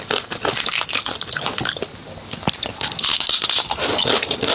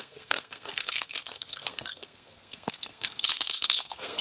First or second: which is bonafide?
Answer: first